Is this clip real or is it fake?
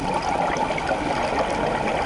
real